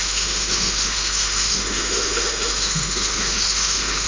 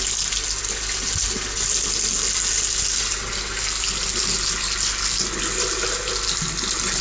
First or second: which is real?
second